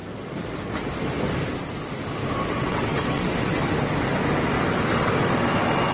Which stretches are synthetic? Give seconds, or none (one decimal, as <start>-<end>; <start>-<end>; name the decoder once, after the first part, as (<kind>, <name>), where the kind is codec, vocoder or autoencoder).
2.5-3.6 (vocoder, WaveNeXt)